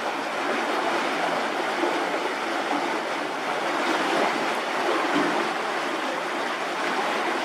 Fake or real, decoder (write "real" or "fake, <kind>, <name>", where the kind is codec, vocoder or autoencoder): real